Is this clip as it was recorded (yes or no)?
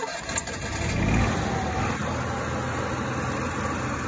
yes